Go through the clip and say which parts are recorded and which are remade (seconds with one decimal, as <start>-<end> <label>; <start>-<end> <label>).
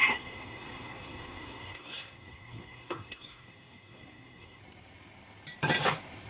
0.0-4.6 remade; 4.6-6.3 recorded